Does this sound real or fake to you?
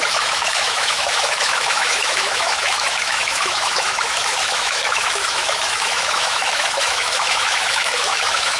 fake